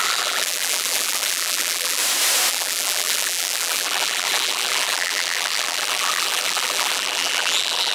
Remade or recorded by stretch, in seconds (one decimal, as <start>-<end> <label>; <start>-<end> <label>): 0.0-2.0 remade; 2.0-2.5 recorded; 2.5-7.9 remade